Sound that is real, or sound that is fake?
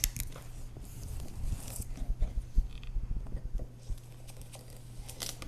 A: real